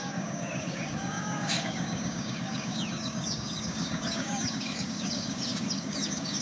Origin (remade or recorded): remade